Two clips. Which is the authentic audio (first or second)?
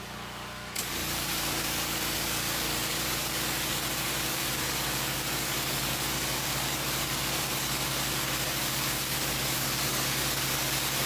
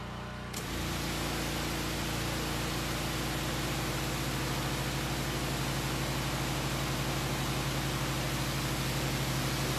second